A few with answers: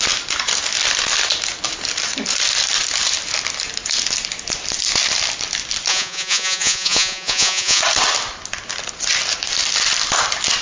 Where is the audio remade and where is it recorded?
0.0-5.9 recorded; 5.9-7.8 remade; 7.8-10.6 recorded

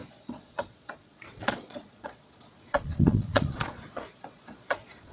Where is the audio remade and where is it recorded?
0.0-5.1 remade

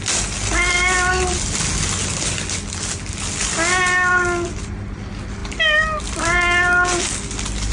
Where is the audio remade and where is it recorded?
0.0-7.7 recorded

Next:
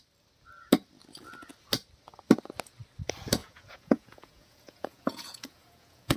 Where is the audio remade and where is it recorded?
0.0-3.4 recorded; 3.4-6.2 remade

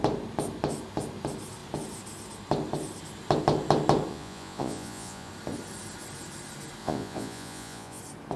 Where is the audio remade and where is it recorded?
0.0-4.1 recorded; 4.1-5.3 remade; 5.3-6.8 recorded; 6.8-8.0 remade; 8.0-8.4 recorded

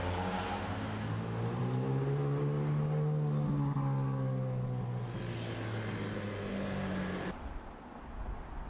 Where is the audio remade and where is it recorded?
0.0-8.7 recorded

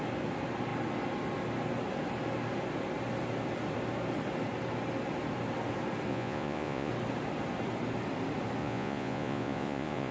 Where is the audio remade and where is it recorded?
0.0-6.1 recorded; 6.1-6.9 remade; 6.9-8.6 recorded; 8.6-10.1 remade